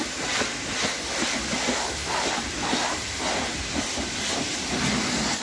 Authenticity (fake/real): real